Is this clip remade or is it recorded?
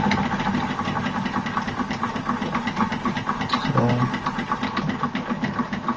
recorded